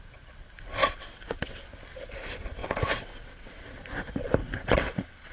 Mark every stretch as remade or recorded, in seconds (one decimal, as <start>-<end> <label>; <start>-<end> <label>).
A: 0.0-0.8 recorded; 0.8-1.6 remade; 1.6-2.6 recorded; 2.6-3.6 remade; 3.6-4.4 recorded; 4.4-5.3 remade